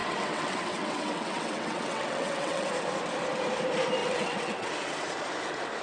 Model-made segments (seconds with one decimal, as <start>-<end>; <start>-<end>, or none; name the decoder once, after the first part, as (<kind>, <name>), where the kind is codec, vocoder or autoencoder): 0.0-2.7 (vocoder, WaveNeXt); 4.0-4.7